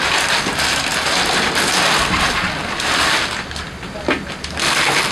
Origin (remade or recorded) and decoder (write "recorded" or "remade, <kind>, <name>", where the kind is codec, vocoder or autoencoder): recorded